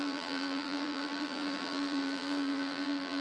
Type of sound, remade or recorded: remade